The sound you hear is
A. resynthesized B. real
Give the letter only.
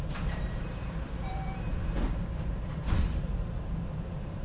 A